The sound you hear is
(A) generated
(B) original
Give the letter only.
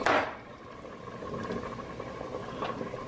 B